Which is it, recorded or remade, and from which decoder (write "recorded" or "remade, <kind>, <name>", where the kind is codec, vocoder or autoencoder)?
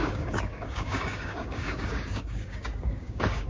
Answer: remade, codec, DAC